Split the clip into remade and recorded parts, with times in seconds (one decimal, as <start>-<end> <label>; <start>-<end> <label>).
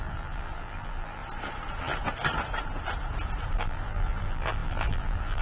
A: 0.0-1.2 remade; 1.2-3.6 recorded; 3.6-5.4 remade